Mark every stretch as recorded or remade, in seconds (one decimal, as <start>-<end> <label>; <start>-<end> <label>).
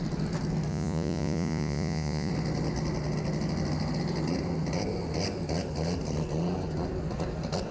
0.0-0.7 recorded; 0.7-2.3 remade; 2.3-7.7 recorded